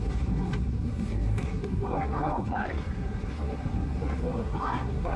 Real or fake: fake